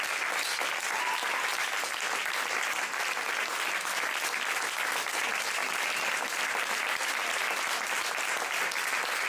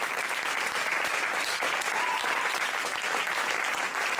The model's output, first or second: second